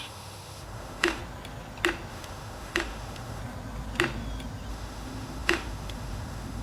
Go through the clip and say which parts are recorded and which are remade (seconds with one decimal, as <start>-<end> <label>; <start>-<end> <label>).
0.0-1.2 remade; 1.2-2.1 recorded; 2.1-3.4 remade; 3.4-4.7 recorded; 4.7-6.6 remade